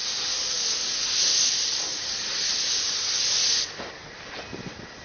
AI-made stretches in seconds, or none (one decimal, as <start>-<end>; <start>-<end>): none